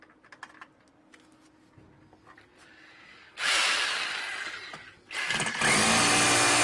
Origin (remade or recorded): recorded